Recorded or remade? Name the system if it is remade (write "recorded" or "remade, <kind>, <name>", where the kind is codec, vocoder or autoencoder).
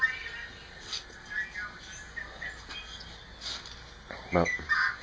recorded